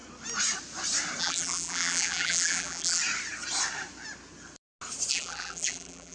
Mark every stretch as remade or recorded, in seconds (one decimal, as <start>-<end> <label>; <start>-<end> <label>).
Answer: 0.0-1.2 recorded; 1.2-3.0 remade; 3.0-5.1 recorded; 5.1-6.1 remade